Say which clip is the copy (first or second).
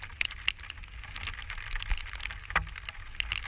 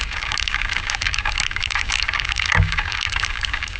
second